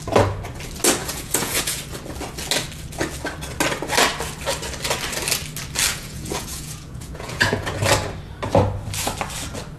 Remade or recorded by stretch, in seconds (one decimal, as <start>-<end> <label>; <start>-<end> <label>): 0.0-1.0 recorded; 1.0-1.8 remade; 1.8-5.9 recorded; 5.9-7.7 remade; 7.7-9.8 recorded